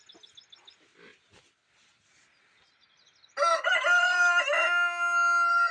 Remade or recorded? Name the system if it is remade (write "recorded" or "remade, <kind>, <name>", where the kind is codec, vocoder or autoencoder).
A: recorded